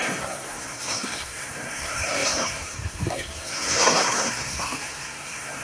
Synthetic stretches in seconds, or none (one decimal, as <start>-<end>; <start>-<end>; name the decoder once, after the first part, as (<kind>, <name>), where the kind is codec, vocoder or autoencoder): 0.0-5.6 (codec, SNAC)